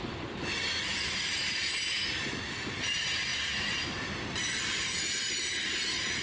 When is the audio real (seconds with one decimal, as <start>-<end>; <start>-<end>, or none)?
0.0-6.2